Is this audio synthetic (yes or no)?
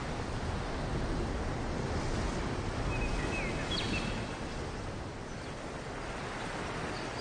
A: no